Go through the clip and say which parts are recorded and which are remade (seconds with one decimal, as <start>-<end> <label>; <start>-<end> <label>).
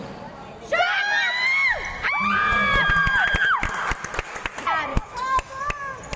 0.0-4.9 recorded; 4.9-5.6 remade; 5.6-6.2 recorded